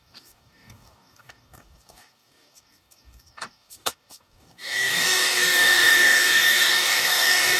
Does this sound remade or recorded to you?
remade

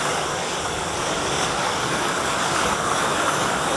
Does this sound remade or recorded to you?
remade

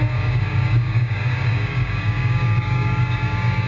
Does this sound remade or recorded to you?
remade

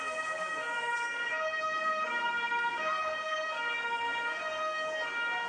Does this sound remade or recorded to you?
remade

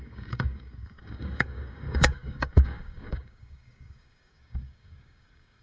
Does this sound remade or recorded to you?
remade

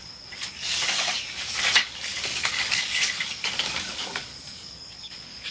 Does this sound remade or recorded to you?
remade